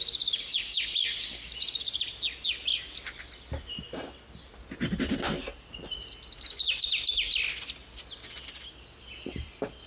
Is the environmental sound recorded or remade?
recorded